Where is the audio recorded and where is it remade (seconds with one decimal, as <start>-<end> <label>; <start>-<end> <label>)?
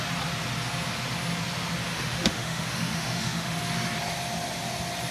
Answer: 0.0-1.9 recorded; 1.9-3.6 remade; 3.6-5.1 recorded